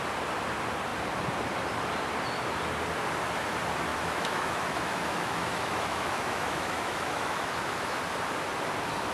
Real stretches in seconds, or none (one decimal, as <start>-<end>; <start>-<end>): 0.0-3.9; 8.0-9.1